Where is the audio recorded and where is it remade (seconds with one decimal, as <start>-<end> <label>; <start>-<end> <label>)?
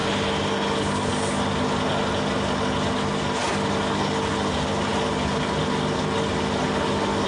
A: 0.0-7.3 recorded